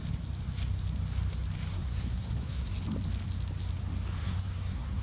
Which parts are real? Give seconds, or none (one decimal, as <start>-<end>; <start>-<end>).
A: 0.0-1.7; 2.7-4.2